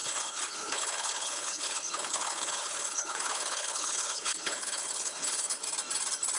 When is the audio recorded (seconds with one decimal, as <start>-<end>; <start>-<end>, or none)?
5.6-6.4

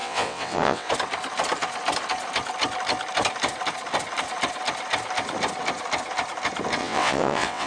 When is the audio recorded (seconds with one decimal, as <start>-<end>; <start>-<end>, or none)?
0.9-6.8